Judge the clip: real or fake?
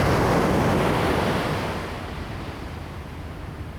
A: real